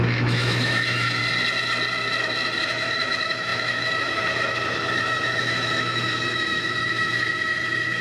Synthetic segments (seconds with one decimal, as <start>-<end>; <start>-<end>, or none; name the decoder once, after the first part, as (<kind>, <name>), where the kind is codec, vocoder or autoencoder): 0.0-1.2 (autoencoder, DAC-VAE); 2.6-8.0